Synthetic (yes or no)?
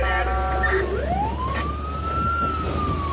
no